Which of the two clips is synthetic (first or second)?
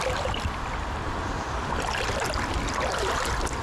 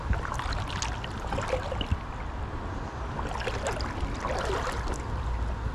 first